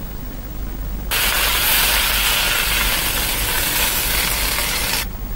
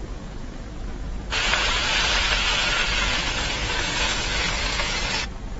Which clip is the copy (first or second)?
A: second